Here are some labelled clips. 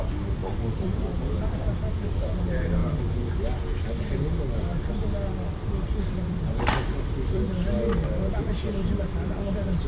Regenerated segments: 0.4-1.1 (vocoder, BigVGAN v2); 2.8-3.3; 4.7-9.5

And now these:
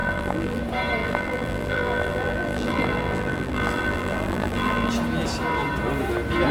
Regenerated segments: 0.0-0.6 (vocoder, BigVGAN v2); 1.0-4.9